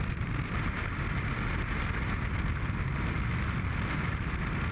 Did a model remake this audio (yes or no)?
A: no